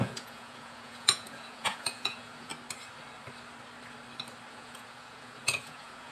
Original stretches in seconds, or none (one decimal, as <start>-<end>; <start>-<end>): 2.5-4.5